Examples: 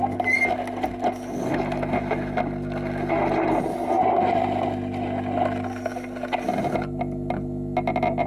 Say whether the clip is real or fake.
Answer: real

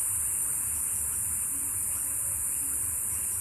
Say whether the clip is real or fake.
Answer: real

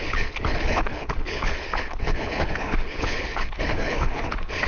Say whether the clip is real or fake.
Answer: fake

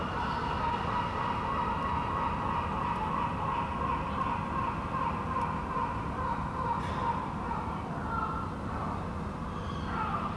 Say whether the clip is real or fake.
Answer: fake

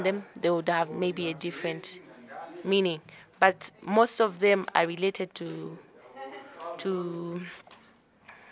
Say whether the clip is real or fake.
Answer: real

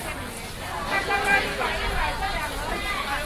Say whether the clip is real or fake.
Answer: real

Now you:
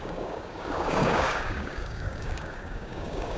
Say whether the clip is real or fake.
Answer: fake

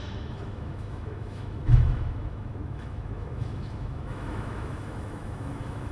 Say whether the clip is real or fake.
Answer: fake